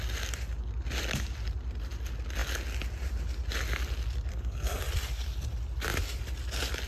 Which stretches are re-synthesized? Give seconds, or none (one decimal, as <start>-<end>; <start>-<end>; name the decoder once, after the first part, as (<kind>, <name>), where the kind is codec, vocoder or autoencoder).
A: 4.3-4.8 (codec, SNAC)